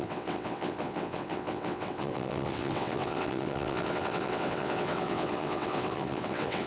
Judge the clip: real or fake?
fake